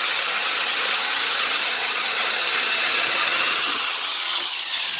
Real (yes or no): no